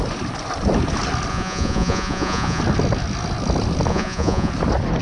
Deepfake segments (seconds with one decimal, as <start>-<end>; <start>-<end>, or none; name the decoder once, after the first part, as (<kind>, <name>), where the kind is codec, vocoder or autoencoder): 1.3-2.6 (vocoder, Vocos); 3.9-4.5